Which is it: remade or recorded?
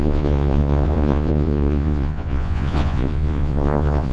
remade